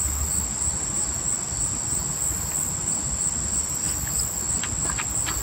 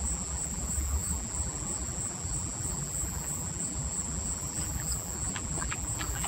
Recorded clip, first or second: first